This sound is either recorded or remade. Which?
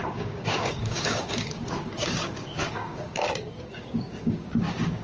remade